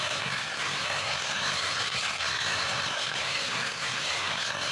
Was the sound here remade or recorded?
remade